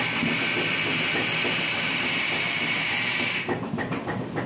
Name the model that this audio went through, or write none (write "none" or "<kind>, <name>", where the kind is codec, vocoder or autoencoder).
none